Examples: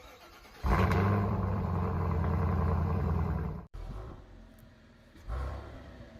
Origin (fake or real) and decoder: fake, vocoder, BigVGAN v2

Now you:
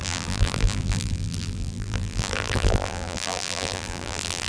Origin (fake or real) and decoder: fake, vocoder, BigVGAN v2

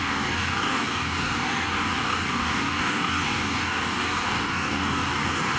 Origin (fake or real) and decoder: fake, codec, DAC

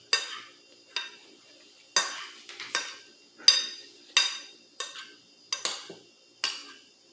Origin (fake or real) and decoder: real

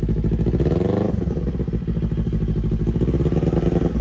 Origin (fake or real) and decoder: real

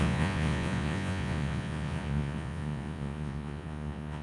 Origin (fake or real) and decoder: fake, vocoder, Vocos